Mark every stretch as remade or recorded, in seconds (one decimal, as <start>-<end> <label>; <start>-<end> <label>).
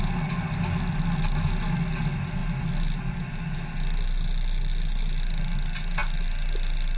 0.0-7.0 recorded